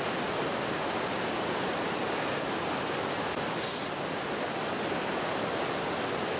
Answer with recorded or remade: recorded